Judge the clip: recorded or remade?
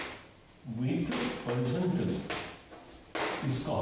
recorded